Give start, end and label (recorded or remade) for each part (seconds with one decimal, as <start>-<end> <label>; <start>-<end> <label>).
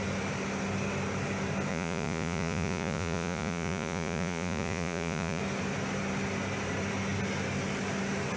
0.0-1.7 recorded; 1.7-5.4 remade; 5.4-8.4 recorded